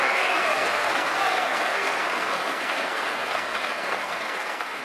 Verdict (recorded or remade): remade